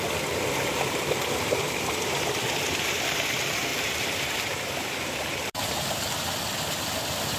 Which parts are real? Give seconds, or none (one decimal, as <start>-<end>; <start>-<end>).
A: 0.0-3.7; 6.4-7.4